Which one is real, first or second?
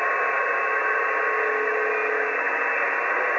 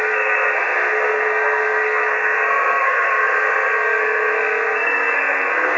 first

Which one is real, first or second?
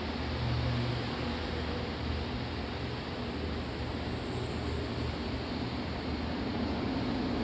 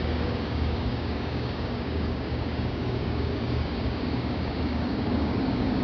first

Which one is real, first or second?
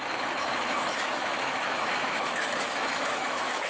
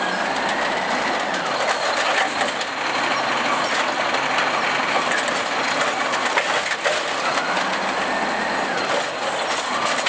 second